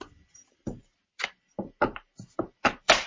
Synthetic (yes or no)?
yes